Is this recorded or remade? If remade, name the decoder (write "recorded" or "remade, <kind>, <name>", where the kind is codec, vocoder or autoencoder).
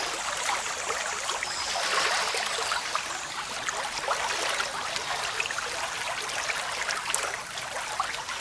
recorded